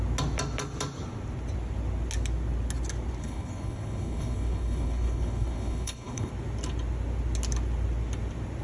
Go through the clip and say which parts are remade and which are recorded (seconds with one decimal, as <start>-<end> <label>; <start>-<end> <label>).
0.0-3.2 recorded; 3.2-6.3 remade; 6.3-8.6 recorded